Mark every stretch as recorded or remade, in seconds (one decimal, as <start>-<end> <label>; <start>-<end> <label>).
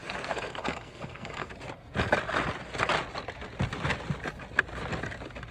0.0-1.5 remade; 1.5-5.5 recorded